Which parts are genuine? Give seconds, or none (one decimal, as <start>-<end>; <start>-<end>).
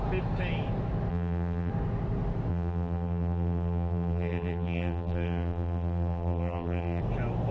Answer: 0.0-1.1; 1.7-2.5; 7.0-7.5